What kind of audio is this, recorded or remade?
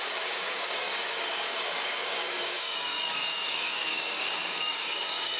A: remade